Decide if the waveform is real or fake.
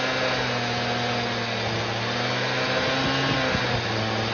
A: real